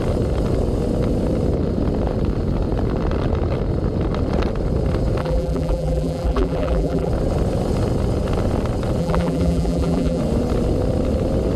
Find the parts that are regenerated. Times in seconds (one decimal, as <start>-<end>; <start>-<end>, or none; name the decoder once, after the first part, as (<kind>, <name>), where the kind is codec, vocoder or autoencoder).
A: 5.2-7.1 (vocoder, BigVGAN v2); 9.0-10.2